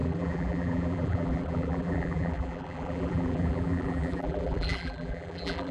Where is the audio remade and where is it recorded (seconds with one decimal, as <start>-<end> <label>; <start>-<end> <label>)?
0.0-5.7 remade